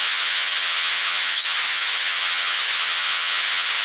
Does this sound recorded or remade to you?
remade